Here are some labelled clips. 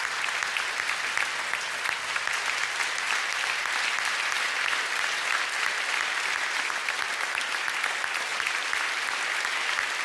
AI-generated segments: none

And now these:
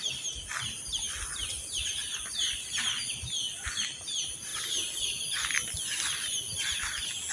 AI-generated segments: none

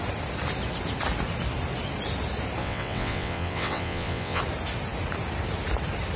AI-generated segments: 2.6-4.4 (vocoder, WaveNeXt)

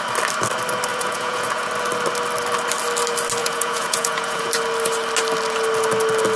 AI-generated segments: 0.9-1.7 (vocoder, Vocos); 3.4-4.5

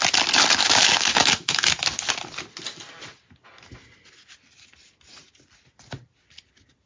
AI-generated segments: 0.6-1.7 (autoencoder, DAC-VAE)

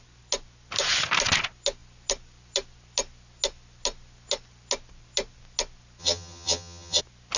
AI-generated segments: 6.0-7.0 (vocoder, HiFi-GAN)